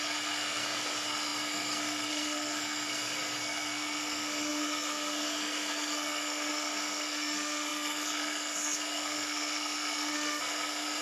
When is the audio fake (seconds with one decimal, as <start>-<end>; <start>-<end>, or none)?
0.0-11.0